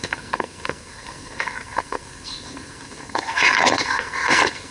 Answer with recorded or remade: remade